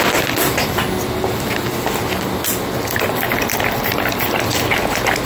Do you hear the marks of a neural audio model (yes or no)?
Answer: no